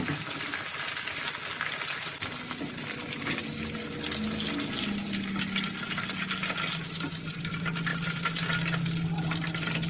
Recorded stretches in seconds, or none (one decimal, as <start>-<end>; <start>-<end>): 0.0-9.9